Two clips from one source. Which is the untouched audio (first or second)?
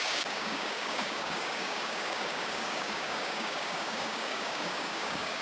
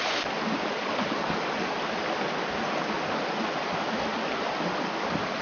second